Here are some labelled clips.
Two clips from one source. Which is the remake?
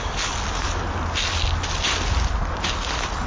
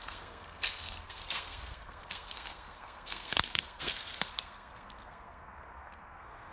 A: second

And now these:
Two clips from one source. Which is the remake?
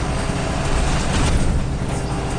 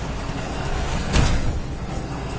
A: second